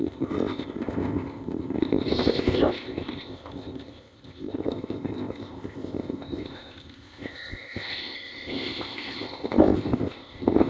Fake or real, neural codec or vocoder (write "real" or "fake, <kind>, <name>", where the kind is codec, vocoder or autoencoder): fake, codec, ZipCodec